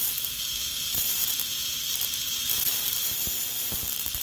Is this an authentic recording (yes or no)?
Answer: no